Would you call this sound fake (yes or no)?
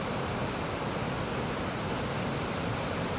no